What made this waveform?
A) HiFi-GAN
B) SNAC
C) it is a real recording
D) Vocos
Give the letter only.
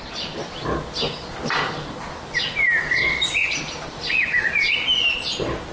C